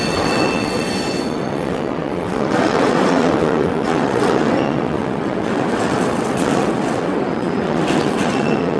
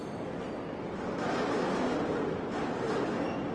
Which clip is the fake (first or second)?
first